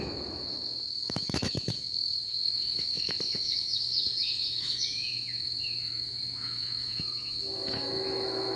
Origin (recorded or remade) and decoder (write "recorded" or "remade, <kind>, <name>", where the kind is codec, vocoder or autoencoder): remade, autoencoder, DAC-VAE